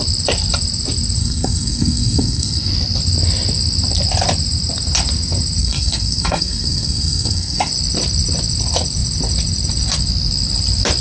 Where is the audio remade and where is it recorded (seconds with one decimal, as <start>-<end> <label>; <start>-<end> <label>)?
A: 0.0-1.2 recorded; 1.2-2.7 remade; 2.7-5.6 recorded; 5.6-7.7 remade; 7.7-11.0 recorded